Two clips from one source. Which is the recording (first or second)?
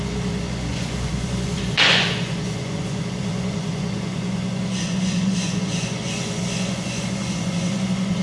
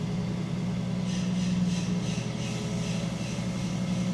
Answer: second